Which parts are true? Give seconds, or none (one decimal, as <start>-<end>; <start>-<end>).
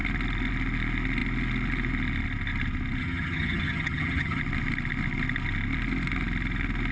0.0-3.0; 4.4-6.9